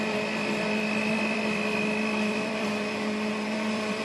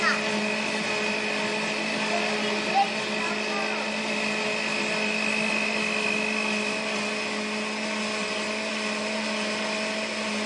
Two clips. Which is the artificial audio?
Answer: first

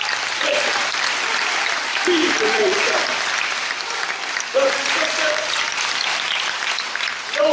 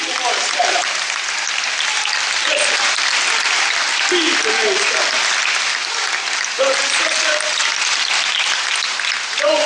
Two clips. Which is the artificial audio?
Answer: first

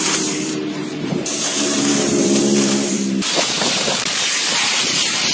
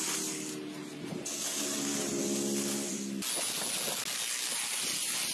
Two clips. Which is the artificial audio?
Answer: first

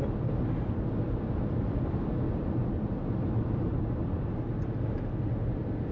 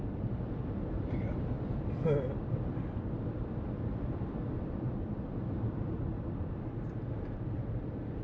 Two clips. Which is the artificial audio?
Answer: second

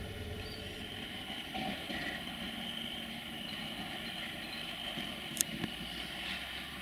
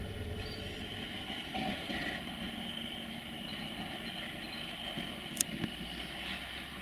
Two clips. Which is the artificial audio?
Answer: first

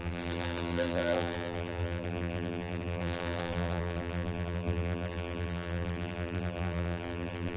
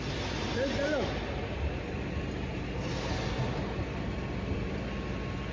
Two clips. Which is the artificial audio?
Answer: first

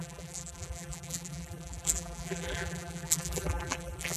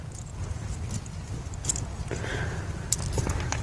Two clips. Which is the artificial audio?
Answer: first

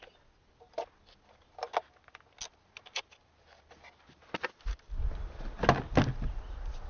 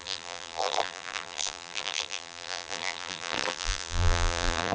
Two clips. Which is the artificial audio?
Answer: second